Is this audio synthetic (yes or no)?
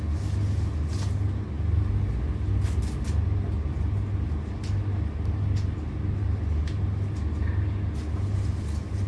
no